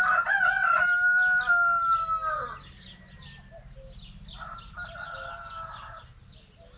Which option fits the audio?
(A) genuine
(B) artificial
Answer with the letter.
A